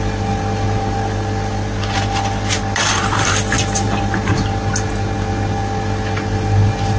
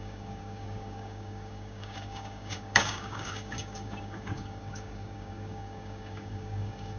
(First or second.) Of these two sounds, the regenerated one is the second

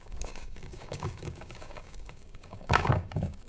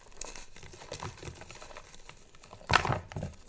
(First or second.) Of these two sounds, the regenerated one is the first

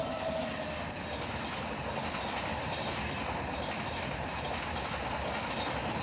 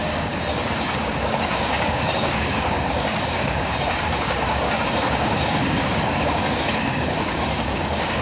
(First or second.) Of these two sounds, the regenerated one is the second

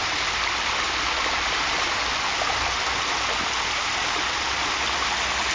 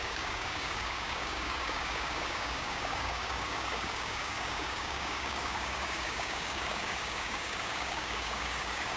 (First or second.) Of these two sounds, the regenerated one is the second